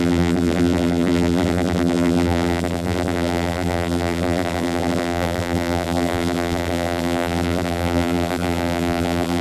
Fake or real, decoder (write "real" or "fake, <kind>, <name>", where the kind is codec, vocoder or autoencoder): fake, vocoder, BigVGAN v2